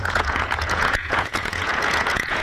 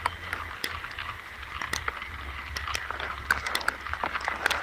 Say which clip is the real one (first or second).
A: second